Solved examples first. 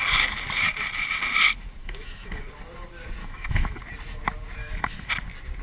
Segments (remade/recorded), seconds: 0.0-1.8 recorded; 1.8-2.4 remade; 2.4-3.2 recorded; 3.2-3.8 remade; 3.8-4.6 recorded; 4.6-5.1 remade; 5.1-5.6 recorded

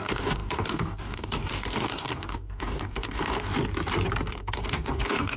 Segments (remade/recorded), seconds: 0.0-3.5 remade; 3.5-4.3 recorded; 4.3-5.4 remade

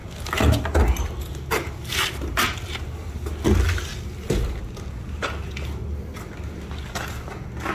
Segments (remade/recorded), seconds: 0.0-7.7 recorded

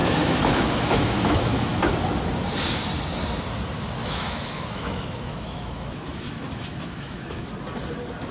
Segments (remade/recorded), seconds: 0.0-1.8 remade; 1.8-4.0 recorded; 4.0-7.5 remade; 7.5-8.3 recorded

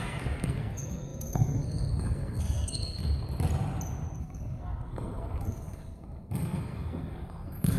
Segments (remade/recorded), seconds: 0.0-3.0 remade; 3.0-4.2 recorded; 4.2-7.8 remade

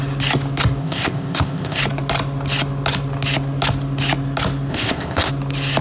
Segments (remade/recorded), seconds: 0.0-0.8 recorded; 0.8-1.8 remade; 1.8-4.7 recorded; 4.7-5.3 remade; 5.3-5.8 recorded

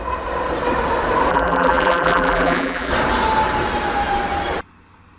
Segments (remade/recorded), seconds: 0.0-1.3 recorded; 1.3-2.9 remade; 2.9-5.2 recorded

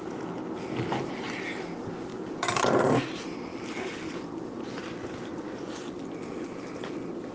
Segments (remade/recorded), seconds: 0.0-5.3 recorded; 5.3-5.8 remade; 5.8-7.3 recorded